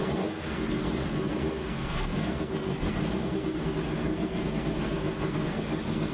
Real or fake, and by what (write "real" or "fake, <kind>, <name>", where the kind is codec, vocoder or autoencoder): fake, codec, SNAC